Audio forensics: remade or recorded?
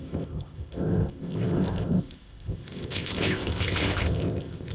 remade